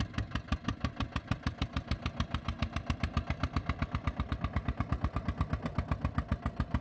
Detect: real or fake real